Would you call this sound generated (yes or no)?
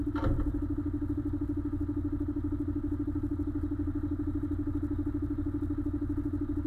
no